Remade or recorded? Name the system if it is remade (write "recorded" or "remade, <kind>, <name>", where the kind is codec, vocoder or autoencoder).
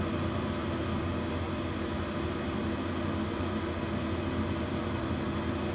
recorded